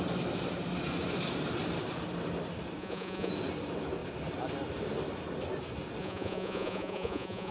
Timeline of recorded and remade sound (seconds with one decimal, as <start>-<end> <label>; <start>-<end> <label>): 0.0-2.8 recorded; 2.8-3.3 remade; 3.3-6.0 recorded; 6.0-7.5 remade

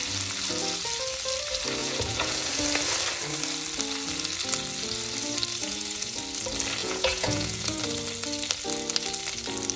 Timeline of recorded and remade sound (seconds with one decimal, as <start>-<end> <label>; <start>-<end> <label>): 0.0-1.8 recorded; 1.8-2.6 remade; 2.6-5.6 recorded; 5.6-6.2 remade; 6.2-6.8 recorded; 6.8-7.8 remade; 7.8-9.8 recorded